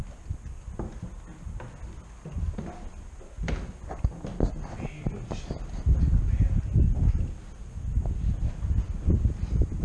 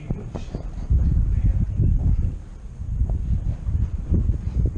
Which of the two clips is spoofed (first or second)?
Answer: second